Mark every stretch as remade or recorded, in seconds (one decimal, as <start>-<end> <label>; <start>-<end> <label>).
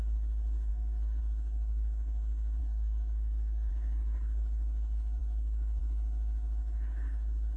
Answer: 0.0-0.7 recorded; 0.7-1.2 remade; 1.2-2.6 recorded; 2.6-3.7 remade; 3.7-7.6 recorded